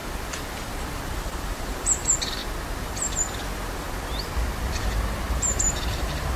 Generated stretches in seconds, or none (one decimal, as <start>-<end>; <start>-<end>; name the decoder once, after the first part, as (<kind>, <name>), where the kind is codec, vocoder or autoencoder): 1.1-2.4 (vocoder, BigVGAN v2); 5.9-6.4